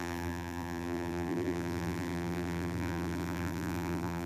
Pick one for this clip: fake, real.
fake